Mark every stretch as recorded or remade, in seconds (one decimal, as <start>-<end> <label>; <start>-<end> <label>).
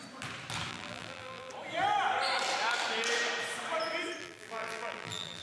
0.0-0.7 recorded; 0.7-1.5 remade; 1.5-4.2 recorded; 4.2-5.4 remade